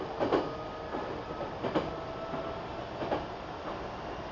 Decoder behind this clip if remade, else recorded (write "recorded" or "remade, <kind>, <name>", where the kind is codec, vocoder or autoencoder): recorded